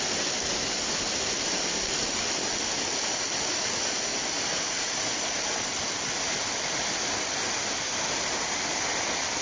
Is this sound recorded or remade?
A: recorded